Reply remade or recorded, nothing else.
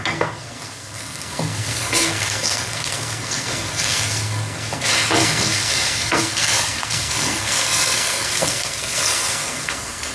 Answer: remade